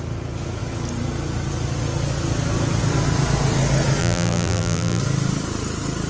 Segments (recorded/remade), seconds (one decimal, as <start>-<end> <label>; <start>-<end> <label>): 0.0-4.0 recorded; 4.0-5.0 remade; 5.0-6.1 recorded